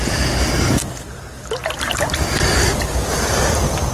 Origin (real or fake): real